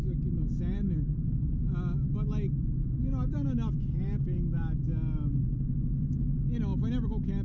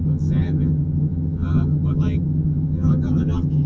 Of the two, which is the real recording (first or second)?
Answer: first